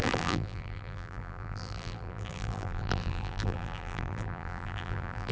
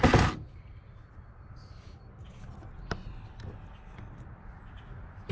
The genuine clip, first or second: second